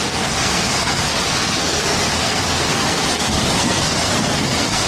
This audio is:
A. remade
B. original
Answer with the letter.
A